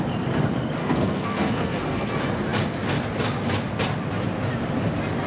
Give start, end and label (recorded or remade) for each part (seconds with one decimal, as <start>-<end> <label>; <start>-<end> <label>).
0.0-0.8 recorded; 0.8-2.1 remade; 2.1-5.3 recorded